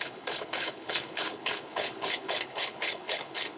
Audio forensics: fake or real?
fake